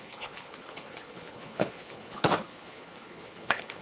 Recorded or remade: remade